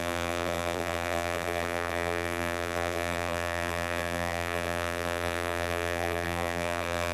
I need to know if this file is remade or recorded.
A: remade